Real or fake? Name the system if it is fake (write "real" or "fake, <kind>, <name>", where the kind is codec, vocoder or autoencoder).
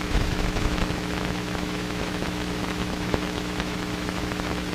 fake, autoencoder, DAC-VAE